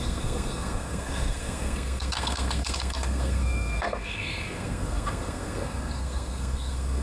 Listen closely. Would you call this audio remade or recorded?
remade